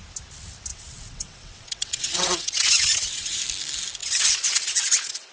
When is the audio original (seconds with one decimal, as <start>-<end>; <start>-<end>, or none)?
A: 0.0-0.7; 3.4-4.0